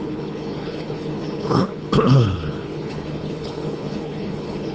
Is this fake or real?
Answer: fake